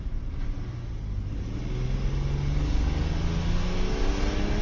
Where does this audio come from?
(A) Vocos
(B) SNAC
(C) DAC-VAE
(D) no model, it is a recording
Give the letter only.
D